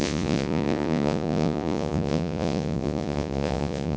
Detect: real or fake fake